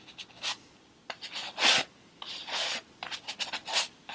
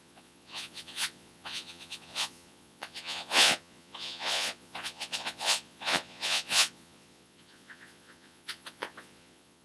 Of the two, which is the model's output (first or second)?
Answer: second